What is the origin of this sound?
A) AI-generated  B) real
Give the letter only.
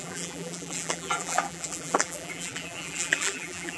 A